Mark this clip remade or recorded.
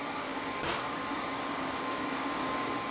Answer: remade